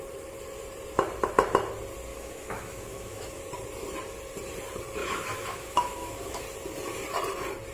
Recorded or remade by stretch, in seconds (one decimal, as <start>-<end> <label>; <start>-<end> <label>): 0.0-2.1 recorded; 2.1-3.4 remade; 3.4-5.0 recorded; 5.0-6.4 remade; 6.4-7.7 recorded